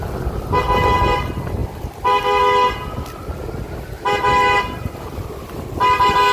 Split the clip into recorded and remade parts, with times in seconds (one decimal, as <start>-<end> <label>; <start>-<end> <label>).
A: 0.0-6.3 recorded